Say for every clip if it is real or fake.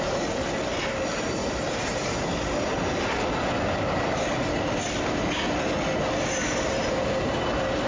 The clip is real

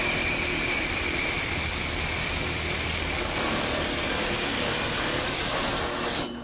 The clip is real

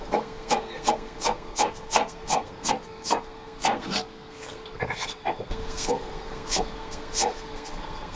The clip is fake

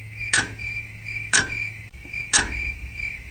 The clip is fake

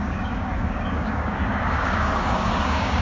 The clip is fake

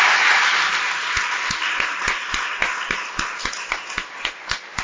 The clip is real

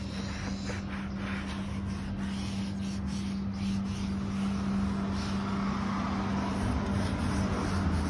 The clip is real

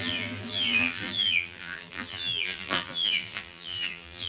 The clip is fake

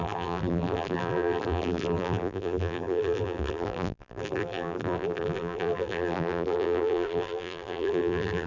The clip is fake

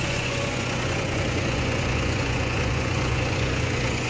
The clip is fake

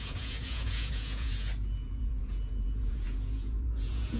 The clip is fake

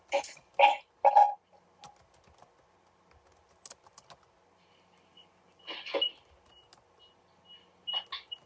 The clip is real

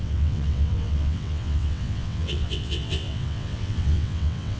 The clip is fake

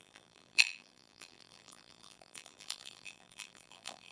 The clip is fake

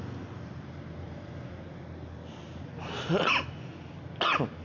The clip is real